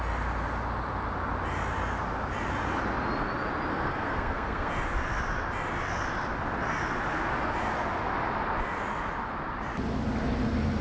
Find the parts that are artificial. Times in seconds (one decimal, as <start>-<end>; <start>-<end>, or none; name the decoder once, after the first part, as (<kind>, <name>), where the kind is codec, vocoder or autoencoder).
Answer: 3.7-4.7 (codec, SNAC)